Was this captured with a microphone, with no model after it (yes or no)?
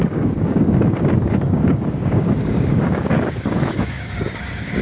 no